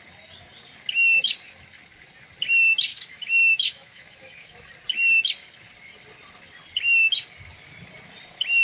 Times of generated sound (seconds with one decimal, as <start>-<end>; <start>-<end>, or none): 2.9-4.7